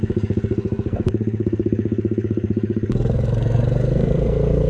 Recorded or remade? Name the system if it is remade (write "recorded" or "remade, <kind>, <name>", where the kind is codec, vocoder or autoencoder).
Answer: remade, codec, SNAC